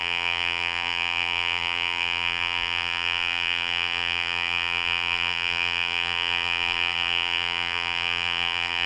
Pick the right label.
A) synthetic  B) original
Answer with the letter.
A